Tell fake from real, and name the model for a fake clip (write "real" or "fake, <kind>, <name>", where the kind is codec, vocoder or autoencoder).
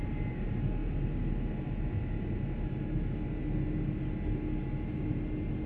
real